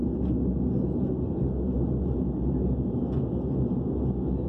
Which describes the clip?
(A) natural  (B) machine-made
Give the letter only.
A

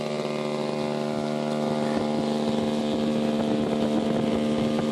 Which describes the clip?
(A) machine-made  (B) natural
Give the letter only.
B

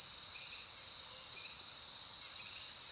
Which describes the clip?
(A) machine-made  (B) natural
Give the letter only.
B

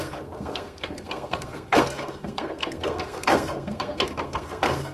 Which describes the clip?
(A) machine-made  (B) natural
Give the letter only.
A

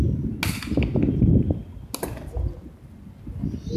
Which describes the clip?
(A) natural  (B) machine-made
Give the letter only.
A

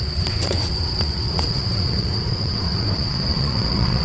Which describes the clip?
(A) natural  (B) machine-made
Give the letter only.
B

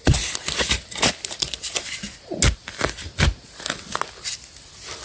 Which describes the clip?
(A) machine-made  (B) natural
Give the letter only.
B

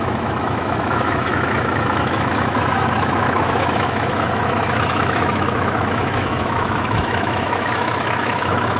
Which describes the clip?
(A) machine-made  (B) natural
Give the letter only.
A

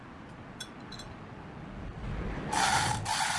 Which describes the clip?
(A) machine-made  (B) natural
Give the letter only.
B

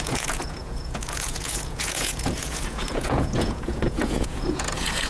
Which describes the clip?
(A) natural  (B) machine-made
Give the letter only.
B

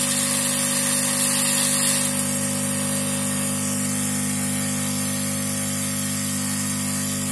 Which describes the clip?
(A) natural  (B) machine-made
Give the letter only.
A